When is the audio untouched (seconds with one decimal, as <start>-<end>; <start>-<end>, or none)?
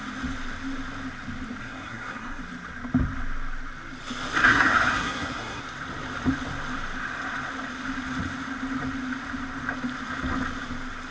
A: 0.0-1.6; 2.4-4.4; 5.6-11.1